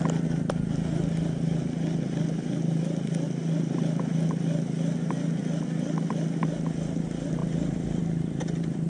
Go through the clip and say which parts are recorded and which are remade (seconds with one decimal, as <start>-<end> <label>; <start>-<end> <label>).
0.0-8.9 recorded